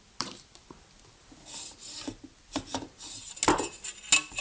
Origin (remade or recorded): recorded